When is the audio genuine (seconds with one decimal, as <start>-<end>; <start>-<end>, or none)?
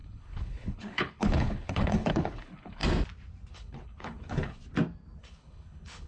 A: 2.8-3.5; 4.6-5.2